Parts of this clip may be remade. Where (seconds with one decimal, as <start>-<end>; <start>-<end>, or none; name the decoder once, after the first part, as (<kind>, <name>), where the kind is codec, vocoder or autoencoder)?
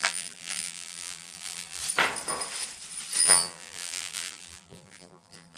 0.0-1.8 (vocoder, BigVGAN v2); 3.2-5.6